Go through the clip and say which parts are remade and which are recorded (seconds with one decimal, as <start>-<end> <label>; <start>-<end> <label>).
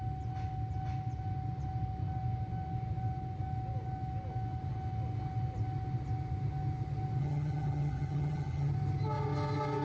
0.0-7.2 recorded; 7.2-8.7 remade; 8.7-9.8 recorded